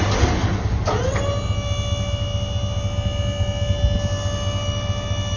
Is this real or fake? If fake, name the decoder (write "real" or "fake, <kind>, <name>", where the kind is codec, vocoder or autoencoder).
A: real